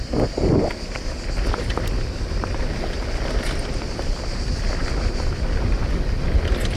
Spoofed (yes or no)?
no